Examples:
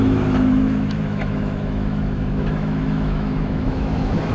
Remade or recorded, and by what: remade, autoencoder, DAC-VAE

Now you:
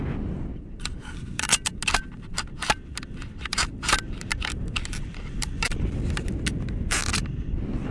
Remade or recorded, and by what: recorded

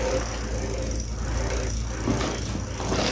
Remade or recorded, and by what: recorded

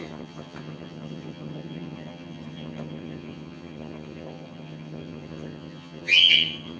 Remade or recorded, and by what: remade, vocoder, HiFi-GAN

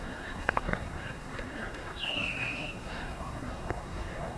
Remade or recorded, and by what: remade, codec, SNAC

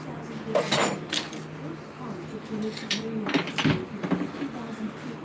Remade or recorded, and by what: recorded